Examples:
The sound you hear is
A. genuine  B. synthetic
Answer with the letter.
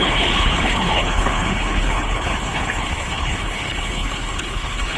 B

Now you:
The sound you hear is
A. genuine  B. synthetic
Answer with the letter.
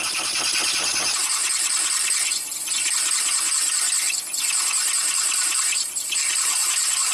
A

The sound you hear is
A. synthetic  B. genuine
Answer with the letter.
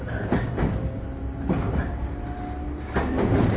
B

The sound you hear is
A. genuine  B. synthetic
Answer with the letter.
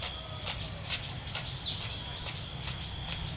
A